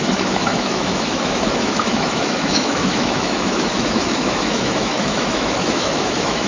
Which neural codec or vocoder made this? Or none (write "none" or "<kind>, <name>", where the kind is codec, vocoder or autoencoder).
autoencoder, DAC-VAE